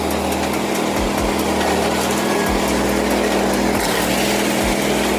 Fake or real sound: real